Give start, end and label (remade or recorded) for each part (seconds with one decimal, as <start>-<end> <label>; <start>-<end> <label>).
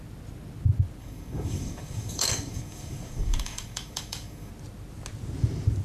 0.0-1.0 recorded; 1.0-4.5 remade; 4.5-5.8 recorded